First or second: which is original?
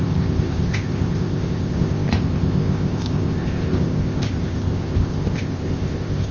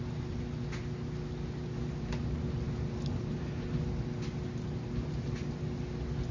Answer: second